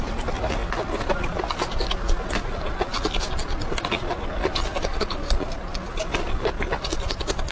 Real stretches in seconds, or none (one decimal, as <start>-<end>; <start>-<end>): 0.0-7.5